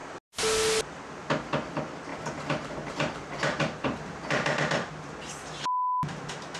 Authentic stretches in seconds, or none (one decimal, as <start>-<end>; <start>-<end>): 0.0-2.1; 4.2-6.6